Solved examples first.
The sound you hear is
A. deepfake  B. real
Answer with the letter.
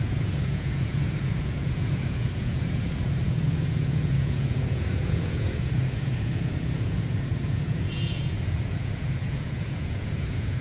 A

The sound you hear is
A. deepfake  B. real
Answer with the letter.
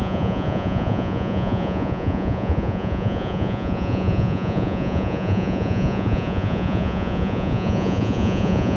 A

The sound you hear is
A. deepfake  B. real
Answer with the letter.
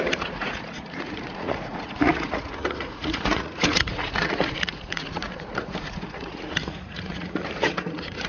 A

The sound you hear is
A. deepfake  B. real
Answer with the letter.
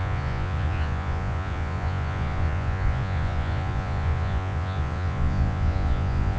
A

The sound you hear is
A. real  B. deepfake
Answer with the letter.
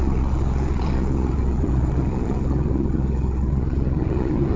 B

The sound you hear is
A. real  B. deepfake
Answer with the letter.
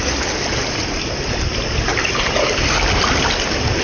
A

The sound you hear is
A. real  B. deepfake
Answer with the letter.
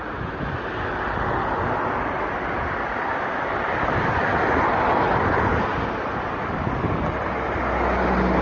A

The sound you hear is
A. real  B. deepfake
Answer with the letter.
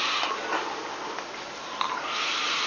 A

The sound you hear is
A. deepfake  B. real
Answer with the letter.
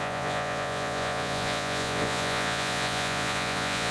A